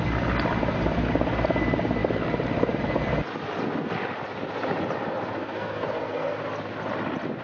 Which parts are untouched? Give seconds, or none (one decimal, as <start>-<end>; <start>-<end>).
0.0-5.4; 6.4-7.4